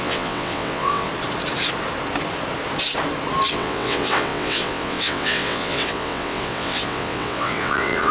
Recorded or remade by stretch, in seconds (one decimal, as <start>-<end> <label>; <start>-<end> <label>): 0.0-1.1 remade; 1.1-3.5 recorded; 3.5-8.1 remade